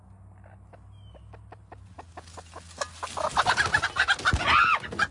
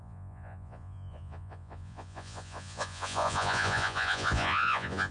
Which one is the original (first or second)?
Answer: first